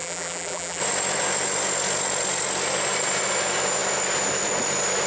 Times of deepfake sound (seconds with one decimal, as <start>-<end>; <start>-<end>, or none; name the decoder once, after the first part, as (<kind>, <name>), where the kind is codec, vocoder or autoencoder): 0.0-0.8 (vocoder, BigVGAN v2)